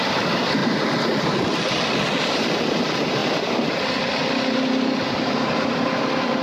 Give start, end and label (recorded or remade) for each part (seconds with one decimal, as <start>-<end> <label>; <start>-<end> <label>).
0.0-6.4 recorded